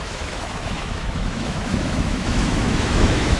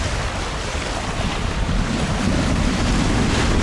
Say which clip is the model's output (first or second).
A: first